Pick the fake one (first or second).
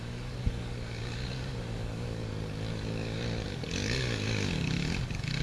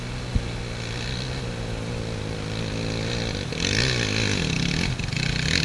first